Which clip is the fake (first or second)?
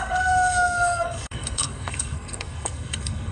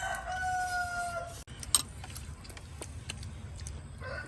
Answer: first